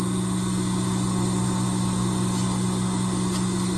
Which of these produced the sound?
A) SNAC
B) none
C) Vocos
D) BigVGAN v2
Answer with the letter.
B